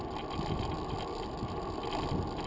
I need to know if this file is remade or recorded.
recorded